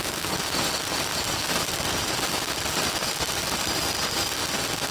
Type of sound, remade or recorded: recorded